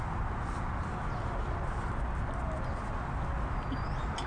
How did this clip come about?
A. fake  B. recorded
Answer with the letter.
B